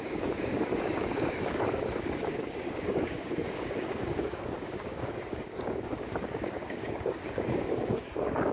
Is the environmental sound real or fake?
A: fake